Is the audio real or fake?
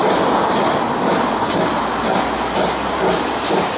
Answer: real